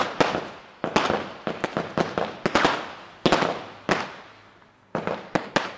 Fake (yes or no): no